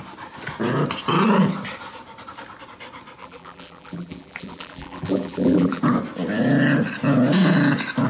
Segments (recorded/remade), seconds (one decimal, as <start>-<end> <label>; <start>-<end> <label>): 0.0-3.2 recorded; 3.2-5.8 remade; 5.8-8.1 recorded